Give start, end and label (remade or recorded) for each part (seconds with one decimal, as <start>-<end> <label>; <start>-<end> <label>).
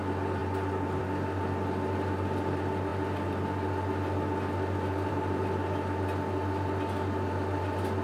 0.0-8.0 recorded